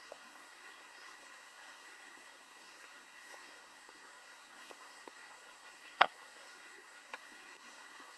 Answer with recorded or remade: remade